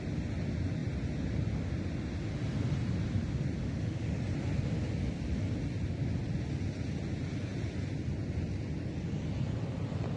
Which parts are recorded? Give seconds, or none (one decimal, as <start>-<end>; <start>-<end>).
0.0-3.6; 4.2-10.2

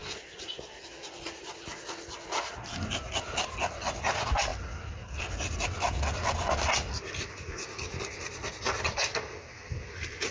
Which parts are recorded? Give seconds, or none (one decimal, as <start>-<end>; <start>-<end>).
0.0-10.3

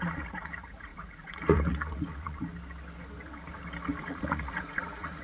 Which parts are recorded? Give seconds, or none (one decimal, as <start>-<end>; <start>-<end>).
2.5-4.0

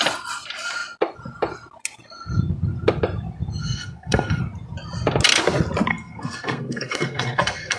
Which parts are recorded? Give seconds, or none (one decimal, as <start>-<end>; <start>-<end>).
0.0-3.6; 4.4-5.9